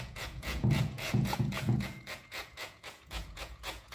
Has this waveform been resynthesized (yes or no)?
yes